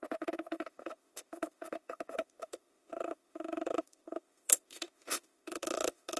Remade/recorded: remade